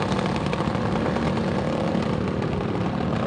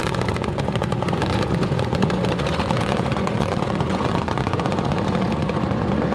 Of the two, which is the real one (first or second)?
first